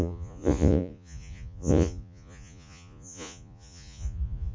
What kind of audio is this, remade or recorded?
remade